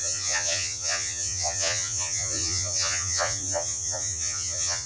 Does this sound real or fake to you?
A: fake